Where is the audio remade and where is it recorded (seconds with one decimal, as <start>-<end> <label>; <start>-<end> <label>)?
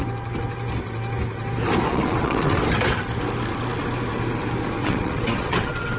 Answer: 0.0-1.9 recorded; 1.9-2.6 remade; 2.6-4.8 recorded; 4.8-6.0 remade